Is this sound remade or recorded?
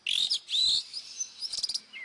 recorded